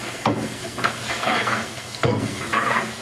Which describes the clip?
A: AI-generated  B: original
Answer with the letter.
A